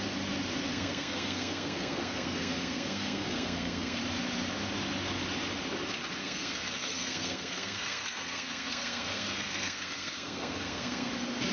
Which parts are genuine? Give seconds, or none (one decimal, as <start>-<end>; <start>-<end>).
0.0-0.7; 4.0-6.2; 11.1-11.5